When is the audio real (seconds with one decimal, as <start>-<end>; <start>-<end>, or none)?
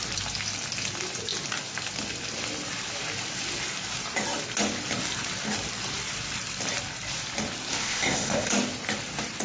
0.0-7.7; 8.5-9.4